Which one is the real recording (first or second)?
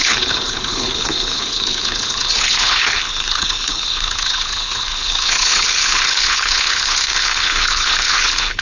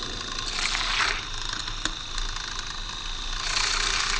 second